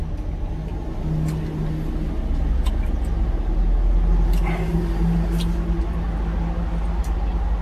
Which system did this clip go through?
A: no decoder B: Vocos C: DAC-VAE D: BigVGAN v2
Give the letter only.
A